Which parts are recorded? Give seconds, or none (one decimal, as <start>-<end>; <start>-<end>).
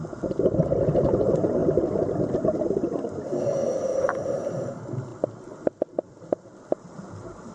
0.0-7.5